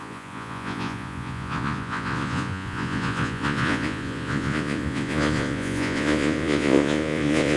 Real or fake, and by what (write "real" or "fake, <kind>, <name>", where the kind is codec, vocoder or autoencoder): fake, vocoder, Vocos